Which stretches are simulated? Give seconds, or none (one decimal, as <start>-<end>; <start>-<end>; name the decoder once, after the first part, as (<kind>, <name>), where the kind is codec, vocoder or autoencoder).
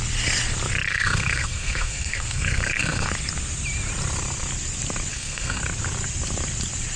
0.9-3.1 (codec, SNAC); 5.1-5.6